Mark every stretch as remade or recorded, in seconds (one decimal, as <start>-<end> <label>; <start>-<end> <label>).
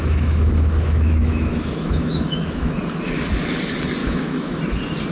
0.0-2.8 remade; 2.8-4.0 recorded; 4.0-4.6 remade; 4.6-5.1 recorded